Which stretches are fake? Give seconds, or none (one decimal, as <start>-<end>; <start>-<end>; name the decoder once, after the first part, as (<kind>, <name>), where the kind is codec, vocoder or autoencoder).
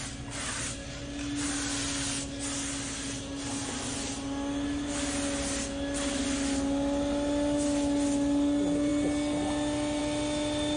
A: none